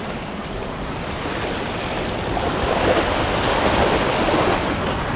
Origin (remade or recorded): recorded